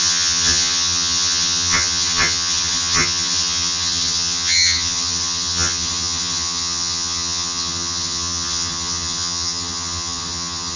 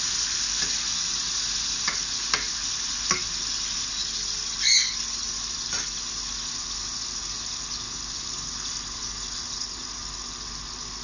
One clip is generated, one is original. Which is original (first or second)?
second